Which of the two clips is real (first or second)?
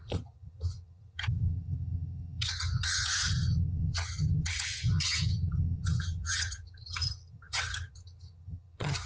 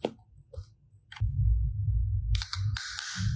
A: second